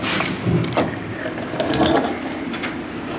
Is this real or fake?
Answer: real